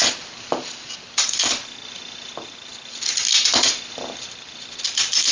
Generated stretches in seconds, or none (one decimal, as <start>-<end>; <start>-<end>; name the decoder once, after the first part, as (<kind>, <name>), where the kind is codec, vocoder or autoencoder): none